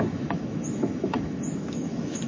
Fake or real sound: fake